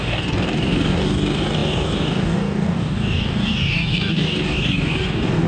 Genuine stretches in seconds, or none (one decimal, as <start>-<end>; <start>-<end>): none